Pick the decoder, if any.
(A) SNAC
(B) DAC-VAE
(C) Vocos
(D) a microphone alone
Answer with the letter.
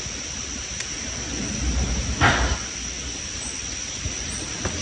D